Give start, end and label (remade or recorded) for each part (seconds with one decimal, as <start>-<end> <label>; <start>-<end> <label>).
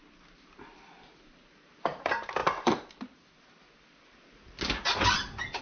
0.0-5.6 recorded